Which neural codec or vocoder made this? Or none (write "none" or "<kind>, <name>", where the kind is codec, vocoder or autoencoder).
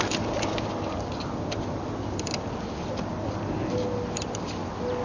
none